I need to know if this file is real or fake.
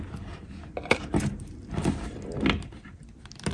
real